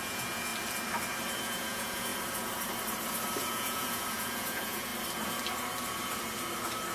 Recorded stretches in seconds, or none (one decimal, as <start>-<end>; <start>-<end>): 0.5-1.4; 2.1-3.4; 4.9-6.9